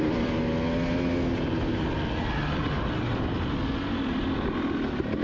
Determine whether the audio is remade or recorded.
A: recorded